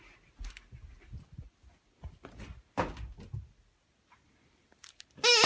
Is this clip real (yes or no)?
yes